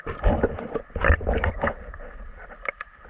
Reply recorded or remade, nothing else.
recorded